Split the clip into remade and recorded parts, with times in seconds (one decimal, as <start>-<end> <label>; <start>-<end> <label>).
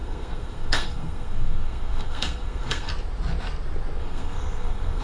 0.0-2.9 remade; 2.9-4.0 recorded; 4.0-5.0 remade